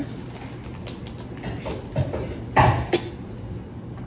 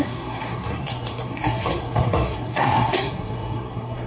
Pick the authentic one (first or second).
first